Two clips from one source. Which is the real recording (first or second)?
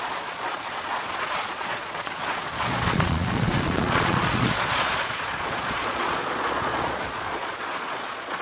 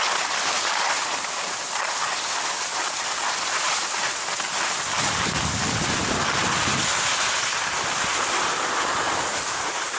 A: second